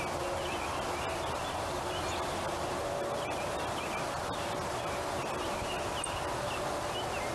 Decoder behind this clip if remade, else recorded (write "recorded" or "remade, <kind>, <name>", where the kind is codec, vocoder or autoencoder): recorded